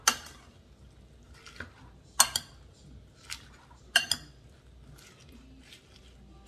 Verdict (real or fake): real